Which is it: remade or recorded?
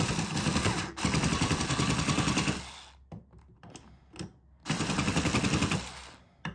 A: recorded